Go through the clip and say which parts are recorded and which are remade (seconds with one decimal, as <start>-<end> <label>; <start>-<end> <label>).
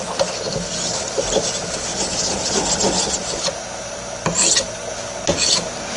0.0-6.0 recorded